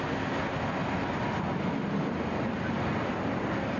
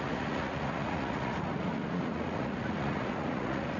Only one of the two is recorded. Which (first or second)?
first